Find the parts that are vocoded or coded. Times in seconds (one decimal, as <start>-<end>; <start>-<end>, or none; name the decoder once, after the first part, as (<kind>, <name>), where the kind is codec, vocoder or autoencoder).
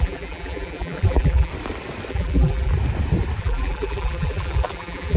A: 0.0-1.5 (vocoder, BigVGAN v2); 2.1-2.7; 3.4-5.2